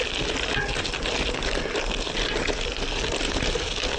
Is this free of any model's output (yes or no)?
yes